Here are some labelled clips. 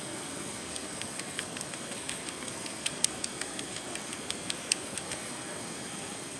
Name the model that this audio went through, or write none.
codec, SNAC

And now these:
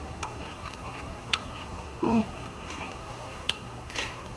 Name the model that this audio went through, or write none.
codec, SNAC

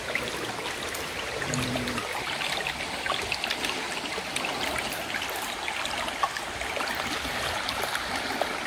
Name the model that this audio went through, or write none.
none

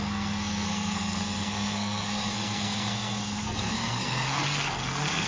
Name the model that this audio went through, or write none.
codec, SNAC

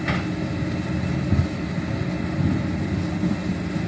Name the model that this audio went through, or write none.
none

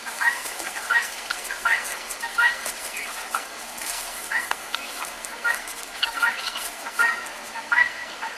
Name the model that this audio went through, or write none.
codec, SNAC